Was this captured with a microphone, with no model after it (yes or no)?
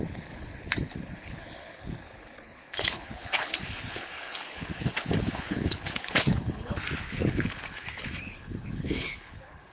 no